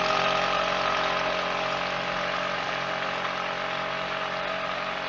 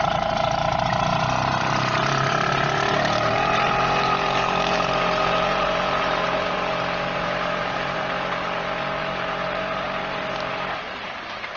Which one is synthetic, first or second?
second